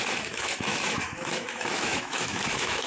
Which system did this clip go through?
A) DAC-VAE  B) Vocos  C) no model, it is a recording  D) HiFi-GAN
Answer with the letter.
A